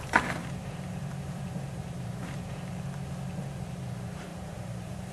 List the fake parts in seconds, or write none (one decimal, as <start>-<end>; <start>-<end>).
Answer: 0.4-2.7; 4.3-5.1